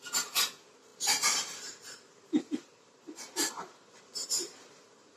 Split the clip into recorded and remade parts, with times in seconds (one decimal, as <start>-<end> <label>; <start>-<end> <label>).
0.0-5.2 remade